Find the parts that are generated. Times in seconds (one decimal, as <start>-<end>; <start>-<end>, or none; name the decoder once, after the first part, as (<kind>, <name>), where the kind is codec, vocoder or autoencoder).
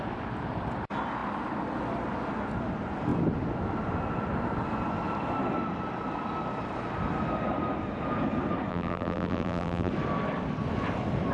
8.7-9.9 (vocoder, BigVGAN v2)